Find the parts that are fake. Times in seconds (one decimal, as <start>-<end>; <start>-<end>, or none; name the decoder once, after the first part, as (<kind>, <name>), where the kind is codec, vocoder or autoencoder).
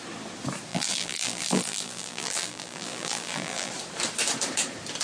0.7-3.7 (vocoder, BigVGAN v2)